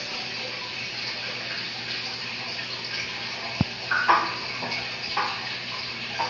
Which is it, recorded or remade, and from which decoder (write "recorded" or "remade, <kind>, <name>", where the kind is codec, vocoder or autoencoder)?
recorded